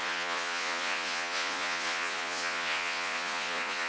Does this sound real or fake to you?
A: fake